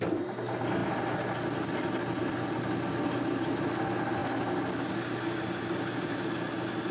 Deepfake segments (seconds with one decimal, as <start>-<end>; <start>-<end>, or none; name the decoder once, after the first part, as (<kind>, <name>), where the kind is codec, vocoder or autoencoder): none